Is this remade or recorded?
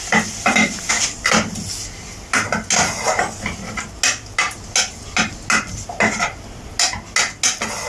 recorded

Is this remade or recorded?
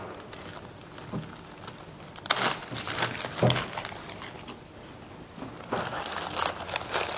recorded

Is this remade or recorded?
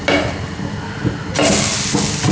recorded